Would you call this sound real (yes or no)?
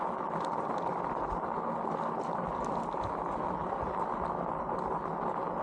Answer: yes